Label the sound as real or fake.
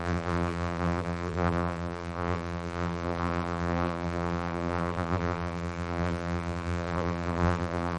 fake